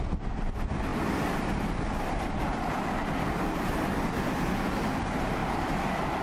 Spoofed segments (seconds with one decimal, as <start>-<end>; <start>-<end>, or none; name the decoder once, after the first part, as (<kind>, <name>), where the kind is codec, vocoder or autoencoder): 0.9-4.6 (vocoder, BigVGAN v2); 5.4-6.2